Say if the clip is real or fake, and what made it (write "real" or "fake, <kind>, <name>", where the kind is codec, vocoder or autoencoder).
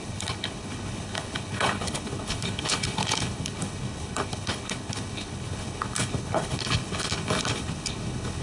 fake, codec, HILCodec